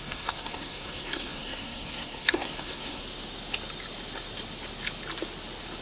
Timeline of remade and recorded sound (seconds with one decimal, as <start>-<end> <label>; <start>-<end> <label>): 0.0-3.0 remade; 3.0-5.8 recorded